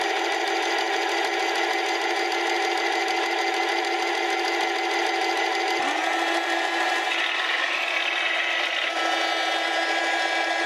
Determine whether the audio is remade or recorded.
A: recorded